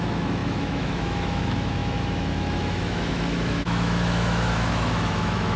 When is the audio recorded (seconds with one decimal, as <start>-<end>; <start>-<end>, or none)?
none